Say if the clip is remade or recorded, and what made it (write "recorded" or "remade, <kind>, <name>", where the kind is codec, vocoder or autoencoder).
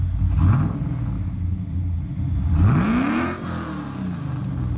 recorded